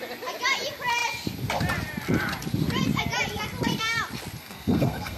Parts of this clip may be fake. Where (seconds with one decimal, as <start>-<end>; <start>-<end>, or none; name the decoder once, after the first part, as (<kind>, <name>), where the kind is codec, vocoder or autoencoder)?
4.4-5.2 (codec, SNAC)